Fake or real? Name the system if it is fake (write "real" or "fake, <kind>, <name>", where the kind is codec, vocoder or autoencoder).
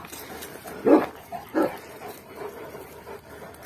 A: real